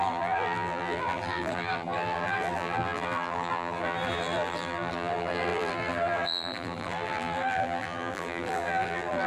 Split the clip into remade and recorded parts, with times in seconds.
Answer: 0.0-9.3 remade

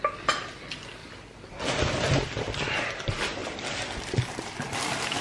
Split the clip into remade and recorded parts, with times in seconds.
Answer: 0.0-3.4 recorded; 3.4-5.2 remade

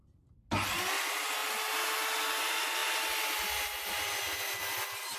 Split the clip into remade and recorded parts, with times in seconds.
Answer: 0.0-5.2 recorded

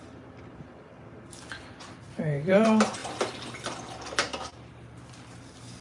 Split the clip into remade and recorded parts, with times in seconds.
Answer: 0.0-1.3 remade; 1.3-2.1 recorded; 2.1-3.0 remade; 3.0-5.8 recorded

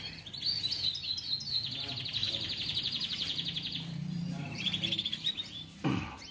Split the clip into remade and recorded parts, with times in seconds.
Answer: 0.0-2.2 recorded; 2.2-6.3 remade

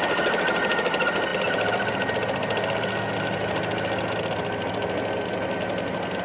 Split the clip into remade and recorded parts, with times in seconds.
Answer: 0.0-6.2 recorded